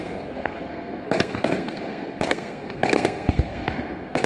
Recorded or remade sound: remade